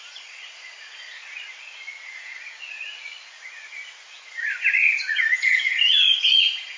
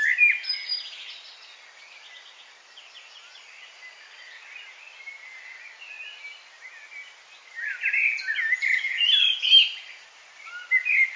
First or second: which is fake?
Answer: first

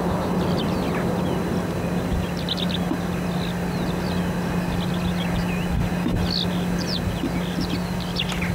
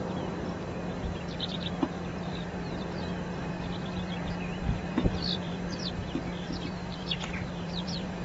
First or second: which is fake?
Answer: second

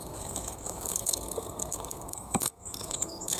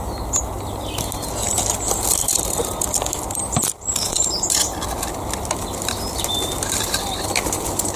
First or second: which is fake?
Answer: first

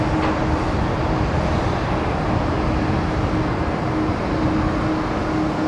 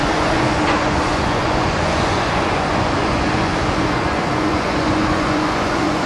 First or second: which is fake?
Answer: second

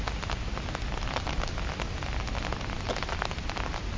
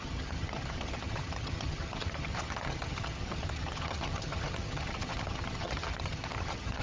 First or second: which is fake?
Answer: second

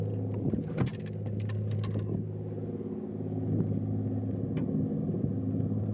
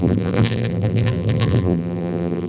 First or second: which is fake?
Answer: second